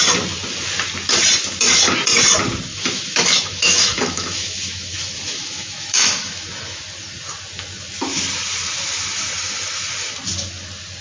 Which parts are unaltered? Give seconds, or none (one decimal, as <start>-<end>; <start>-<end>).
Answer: 0.0-2.7; 6.8-11.0

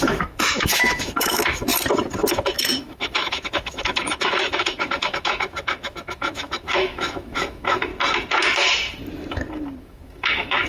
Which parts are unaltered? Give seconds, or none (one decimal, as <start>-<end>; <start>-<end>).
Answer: 1.7-2.3; 7.9-9.8